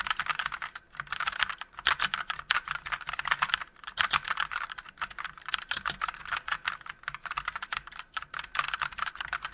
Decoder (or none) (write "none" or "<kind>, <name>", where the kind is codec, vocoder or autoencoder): none